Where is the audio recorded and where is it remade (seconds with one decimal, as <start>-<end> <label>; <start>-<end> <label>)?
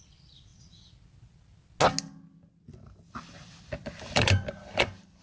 0.0-0.5 remade; 0.5-3.6 recorded; 3.6-5.2 remade